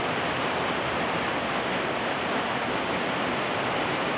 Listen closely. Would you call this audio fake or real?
real